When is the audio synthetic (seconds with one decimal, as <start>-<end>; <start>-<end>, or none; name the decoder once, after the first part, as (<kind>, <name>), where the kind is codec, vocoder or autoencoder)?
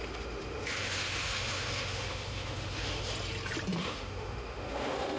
0.0-3.1 (autoencoder, DAC-VAE); 3.8-5.2